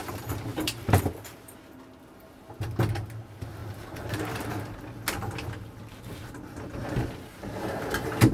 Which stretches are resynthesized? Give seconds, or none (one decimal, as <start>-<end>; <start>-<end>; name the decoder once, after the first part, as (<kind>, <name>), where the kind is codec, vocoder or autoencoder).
0.5-1.0 (vocoder, BigVGAN v2); 3.6-4.6